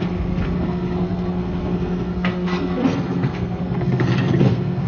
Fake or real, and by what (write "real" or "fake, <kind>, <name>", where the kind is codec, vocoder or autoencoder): fake, codec, SNAC